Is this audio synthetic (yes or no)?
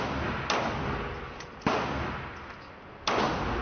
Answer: no